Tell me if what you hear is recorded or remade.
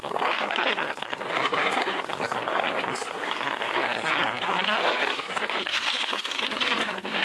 remade